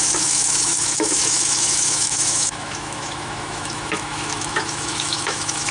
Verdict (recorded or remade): remade